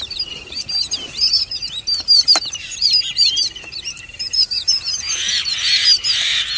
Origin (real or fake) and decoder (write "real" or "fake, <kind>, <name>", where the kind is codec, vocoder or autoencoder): fake, vocoder, BigVGAN v2